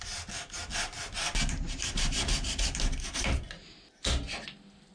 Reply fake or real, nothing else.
real